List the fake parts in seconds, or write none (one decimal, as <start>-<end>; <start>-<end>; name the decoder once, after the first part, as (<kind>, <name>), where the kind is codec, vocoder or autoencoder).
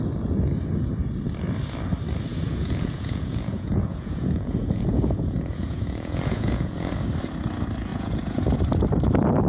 2.3-6.9 (vocoder, Vocos); 7.9-8.6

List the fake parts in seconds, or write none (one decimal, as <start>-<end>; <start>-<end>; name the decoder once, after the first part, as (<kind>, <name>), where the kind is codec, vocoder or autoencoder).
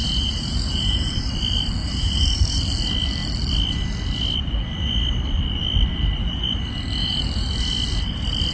0.0-1.4 (vocoder, BigVGAN v2); 1.8-2.6; 7.0-7.7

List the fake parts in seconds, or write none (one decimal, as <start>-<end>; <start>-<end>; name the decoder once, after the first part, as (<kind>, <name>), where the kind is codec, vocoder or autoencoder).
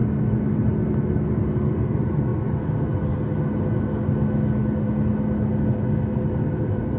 none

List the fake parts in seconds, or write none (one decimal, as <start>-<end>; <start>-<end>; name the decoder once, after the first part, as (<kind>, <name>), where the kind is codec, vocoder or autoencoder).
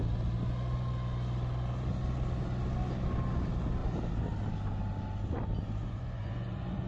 5.8-6.9 (vocoder, Vocos)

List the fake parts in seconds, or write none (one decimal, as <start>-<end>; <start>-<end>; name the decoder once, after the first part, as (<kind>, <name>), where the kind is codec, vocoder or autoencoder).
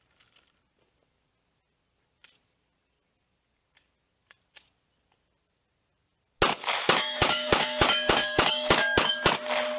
6.8-9.3 (codec, DAC)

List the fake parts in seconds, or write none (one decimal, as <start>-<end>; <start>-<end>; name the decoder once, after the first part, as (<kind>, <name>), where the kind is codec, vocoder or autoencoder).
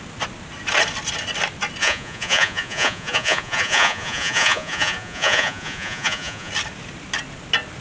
1.8-6.5 (vocoder, Vocos)